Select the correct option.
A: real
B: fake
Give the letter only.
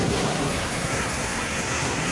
B